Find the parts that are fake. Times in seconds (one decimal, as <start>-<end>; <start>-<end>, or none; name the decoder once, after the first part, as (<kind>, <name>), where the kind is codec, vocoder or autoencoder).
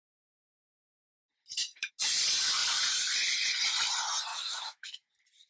4.3-5.1 (autoencoder, DAC-VAE)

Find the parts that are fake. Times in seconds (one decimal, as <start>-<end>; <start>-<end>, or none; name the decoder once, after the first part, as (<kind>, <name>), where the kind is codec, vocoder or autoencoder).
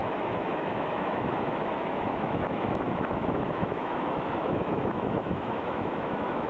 0.0-6.5 (autoencoder, DAC-VAE)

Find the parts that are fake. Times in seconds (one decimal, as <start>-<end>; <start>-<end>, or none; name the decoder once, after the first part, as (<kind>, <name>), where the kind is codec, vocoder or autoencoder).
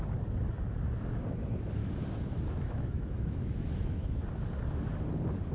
1.8-4.2 (autoencoder, DAC-VAE)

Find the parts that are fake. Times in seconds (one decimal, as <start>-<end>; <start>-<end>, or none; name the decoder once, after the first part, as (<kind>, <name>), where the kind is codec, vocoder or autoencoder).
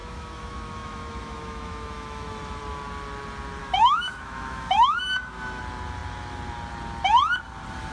0.0-2.6 (autoencoder, DAC-VAE); 3.6-5.6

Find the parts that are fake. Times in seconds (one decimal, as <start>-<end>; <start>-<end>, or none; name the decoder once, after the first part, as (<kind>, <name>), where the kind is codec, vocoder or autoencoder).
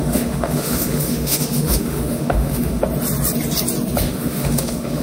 0.0-2.8 (autoencoder, DAC-VAE); 4.0-5.0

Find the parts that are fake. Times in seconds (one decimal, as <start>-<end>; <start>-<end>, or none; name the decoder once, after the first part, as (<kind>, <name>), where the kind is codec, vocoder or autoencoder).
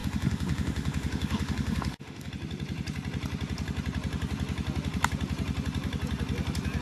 0.0-2.3 (autoencoder, DAC-VAE)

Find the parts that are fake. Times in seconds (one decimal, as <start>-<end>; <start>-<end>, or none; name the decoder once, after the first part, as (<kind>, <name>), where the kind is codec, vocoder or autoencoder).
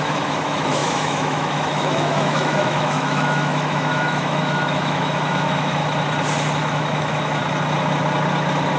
0.0-5.8 (autoencoder, DAC-VAE); 6.5-7.4